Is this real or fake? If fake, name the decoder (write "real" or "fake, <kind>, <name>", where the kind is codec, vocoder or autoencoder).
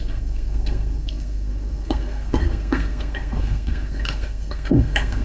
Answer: fake, codec, SNAC